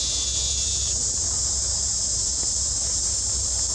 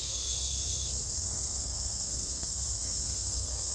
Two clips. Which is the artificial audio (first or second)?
second